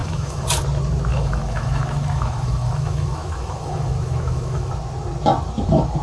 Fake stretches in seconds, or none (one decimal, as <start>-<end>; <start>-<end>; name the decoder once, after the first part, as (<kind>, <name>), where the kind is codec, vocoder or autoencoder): 0.0-0.6 (autoencoder, DAC-VAE); 1.1-4.7